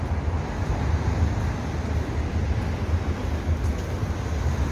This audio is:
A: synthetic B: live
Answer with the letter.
B